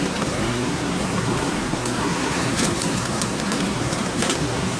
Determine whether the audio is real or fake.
fake